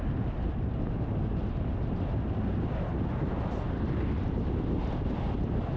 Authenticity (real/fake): real